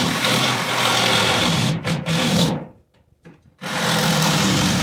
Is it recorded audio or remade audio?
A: remade